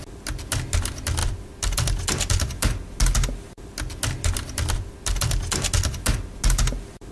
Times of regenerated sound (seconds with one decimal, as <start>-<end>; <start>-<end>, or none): none